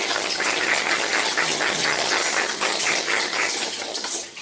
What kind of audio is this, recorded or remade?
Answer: remade